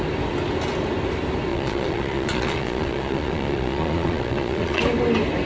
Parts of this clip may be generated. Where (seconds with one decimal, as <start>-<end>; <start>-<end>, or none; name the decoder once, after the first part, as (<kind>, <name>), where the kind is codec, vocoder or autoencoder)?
1.5-4.8 (vocoder, Vocos)